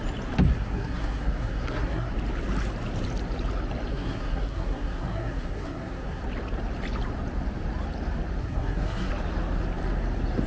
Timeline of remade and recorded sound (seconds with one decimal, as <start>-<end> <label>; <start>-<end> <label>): 0.0-0.5 recorded; 0.5-2.1 remade; 2.1-3.9 recorded; 3.9-6.2 remade; 6.2-8.4 recorded; 8.4-9.1 remade; 9.1-10.5 recorded